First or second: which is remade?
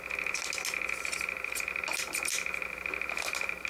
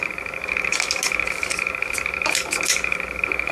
second